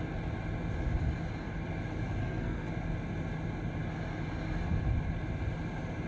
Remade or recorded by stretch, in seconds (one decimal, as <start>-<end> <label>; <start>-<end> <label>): 0.0-2.2 recorded; 2.2-2.7 remade; 2.7-6.1 recorded